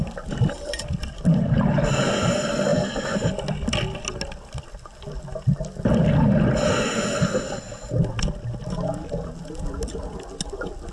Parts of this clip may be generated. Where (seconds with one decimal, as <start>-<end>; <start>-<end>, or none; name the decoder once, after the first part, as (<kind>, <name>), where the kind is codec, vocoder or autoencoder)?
none

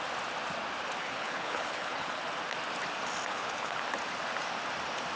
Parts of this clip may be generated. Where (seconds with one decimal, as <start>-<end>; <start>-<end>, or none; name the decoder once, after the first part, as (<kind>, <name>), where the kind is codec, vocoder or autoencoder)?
1.0-2.2 (codec, HILCodec); 3.3-3.8